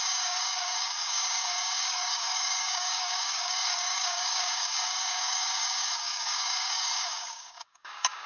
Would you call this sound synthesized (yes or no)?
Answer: yes